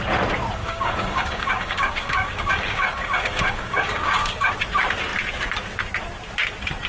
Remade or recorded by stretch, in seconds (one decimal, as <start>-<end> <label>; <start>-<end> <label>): 0.0-0.6 recorded; 0.6-4.5 remade; 4.5-6.9 recorded